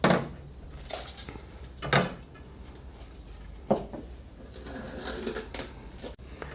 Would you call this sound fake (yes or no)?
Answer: no